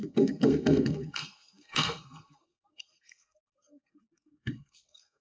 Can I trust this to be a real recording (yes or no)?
no